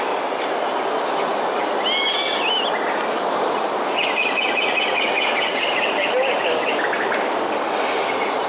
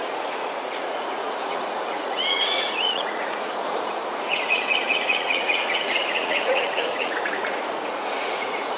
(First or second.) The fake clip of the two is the second